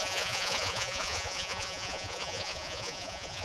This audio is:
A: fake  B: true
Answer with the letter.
A